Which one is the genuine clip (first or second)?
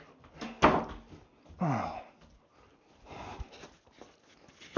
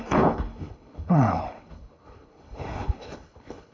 first